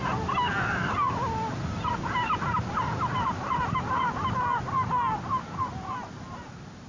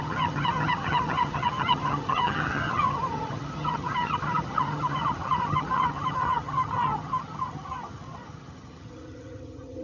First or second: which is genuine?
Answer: first